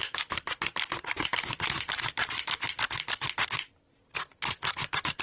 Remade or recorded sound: recorded